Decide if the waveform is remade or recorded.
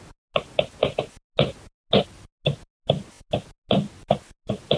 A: recorded